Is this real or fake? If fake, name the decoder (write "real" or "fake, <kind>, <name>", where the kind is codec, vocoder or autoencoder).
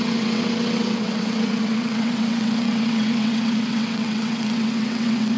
fake, vocoder, WaveNeXt